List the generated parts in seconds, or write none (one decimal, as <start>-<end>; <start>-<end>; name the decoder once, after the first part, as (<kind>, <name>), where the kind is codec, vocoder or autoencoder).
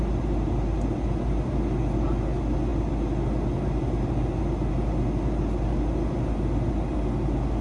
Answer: none